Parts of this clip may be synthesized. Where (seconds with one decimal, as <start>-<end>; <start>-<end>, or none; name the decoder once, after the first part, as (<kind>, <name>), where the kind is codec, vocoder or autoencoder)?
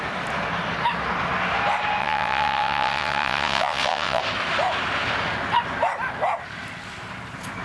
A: 2.0-4.2 (vocoder, WaveNeXt)